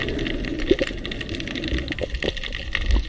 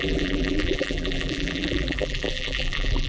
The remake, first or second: second